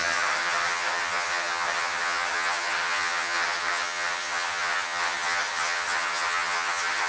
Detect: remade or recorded remade